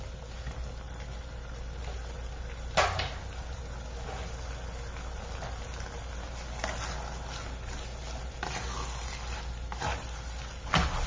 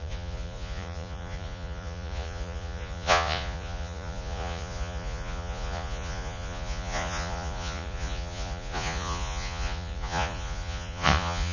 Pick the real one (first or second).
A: first